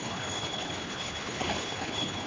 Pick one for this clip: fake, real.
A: fake